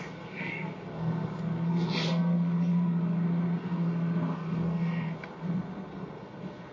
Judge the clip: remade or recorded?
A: remade